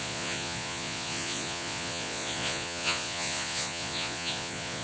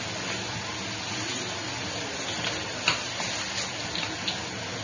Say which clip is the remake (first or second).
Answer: first